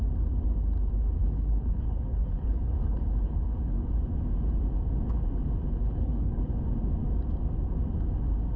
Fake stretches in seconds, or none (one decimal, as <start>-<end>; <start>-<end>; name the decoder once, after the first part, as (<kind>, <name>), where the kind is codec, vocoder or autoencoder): 1.2-3.9 (codec, HILCodec); 5.7-6.5